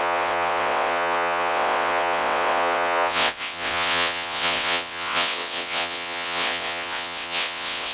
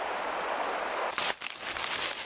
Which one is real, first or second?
second